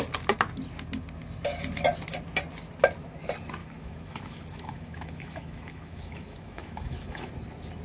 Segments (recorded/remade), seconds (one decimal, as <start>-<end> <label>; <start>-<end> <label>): 0.0-3.6 recorded; 3.6-7.3 remade; 7.3-7.8 recorded